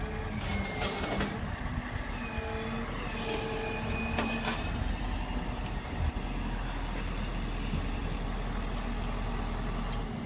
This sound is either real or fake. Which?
real